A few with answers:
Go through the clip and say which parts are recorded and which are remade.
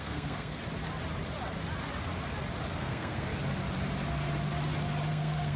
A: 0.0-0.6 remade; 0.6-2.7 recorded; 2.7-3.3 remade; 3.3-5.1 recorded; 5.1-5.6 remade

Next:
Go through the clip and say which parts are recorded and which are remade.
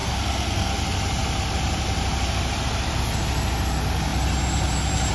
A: 0.0-0.7 remade; 0.7-5.1 recorded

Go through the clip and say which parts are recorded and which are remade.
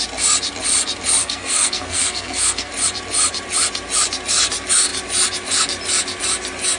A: 0.0-1.2 recorded; 1.2-2.7 remade; 2.7-6.8 recorded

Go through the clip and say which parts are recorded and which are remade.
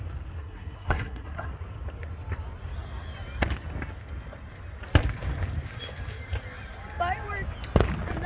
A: 0.0-0.4 recorded; 0.4-1.5 remade; 1.5-8.3 recorded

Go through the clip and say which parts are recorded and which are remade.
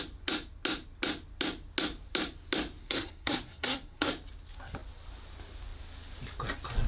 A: 0.0-2.8 recorded; 2.8-4.1 remade; 4.1-6.9 recorded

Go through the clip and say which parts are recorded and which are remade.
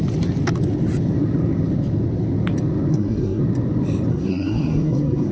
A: 0.0-2.9 recorded; 2.9-3.4 remade; 3.4-4.1 recorded; 4.1-5.3 remade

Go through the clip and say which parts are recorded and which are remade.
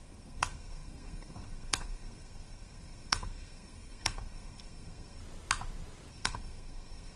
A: 0.0-5.2 remade; 5.2-6.1 recorded; 6.1-7.2 remade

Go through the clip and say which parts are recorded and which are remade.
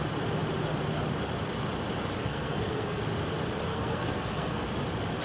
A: 0.0-2.2 recorded; 2.2-3.0 remade; 3.0-3.7 recorded; 3.7-4.7 remade; 4.7-5.2 recorded